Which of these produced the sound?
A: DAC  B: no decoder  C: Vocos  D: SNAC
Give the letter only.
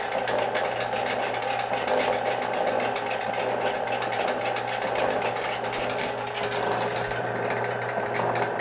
B